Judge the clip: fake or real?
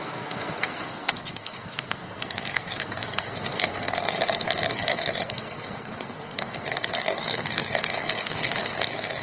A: fake